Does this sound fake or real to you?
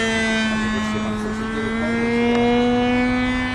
real